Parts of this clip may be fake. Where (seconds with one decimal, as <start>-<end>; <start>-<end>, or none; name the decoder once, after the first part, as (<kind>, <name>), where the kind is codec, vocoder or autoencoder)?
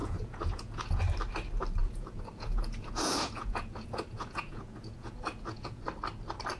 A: 0.0-1.0 (vocoder, Vocos); 1.8-5.8